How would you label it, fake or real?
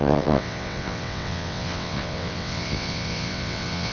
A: fake